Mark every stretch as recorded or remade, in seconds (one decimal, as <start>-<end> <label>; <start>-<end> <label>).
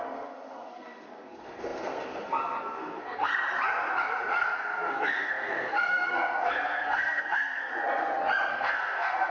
0.0-3.3 remade; 3.3-4.2 recorded; 4.2-7.7 remade; 7.7-8.5 recorded; 8.5-9.3 remade